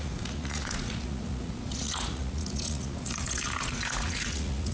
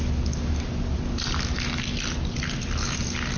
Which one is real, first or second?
second